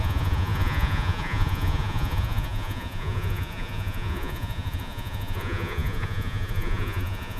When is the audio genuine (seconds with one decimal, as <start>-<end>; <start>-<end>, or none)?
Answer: none